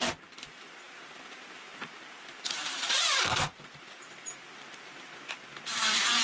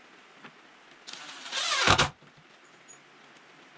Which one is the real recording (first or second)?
second